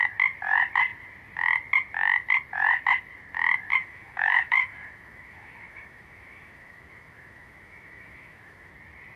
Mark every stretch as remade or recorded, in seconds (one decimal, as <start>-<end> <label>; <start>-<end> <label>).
0.0-3.7 recorded; 3.7-8.7 remade; 8.7-9.2 recorded